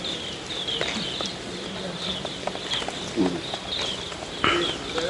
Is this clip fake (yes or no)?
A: no